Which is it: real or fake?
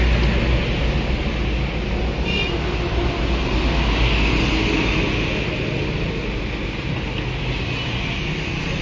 real